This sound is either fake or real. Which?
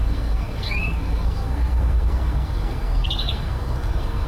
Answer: fake